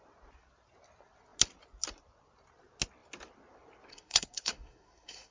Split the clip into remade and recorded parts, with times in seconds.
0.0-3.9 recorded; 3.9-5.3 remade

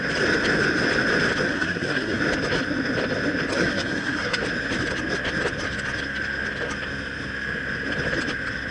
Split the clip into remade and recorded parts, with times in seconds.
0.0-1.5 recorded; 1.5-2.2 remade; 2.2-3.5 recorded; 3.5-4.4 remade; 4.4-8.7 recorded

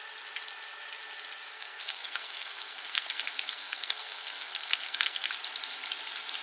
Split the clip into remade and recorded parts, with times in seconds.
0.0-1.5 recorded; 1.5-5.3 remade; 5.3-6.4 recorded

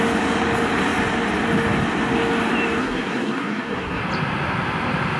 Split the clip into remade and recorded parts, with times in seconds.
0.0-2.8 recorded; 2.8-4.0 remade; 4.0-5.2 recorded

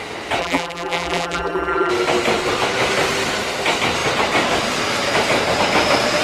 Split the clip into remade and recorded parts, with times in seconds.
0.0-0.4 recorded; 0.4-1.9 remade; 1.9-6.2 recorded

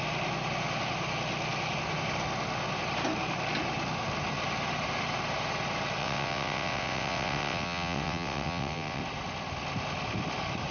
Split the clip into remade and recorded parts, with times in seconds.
0.0-6.0 recorded; 6.0-9.0 remade; 9.0-10.7 recorded

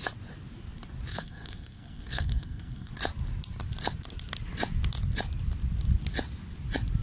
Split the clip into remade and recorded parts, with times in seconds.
0.0-1.1 recorded; 1.1-2.9 remade; 2.9-7.0 recorded